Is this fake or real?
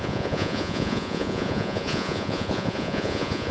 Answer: fake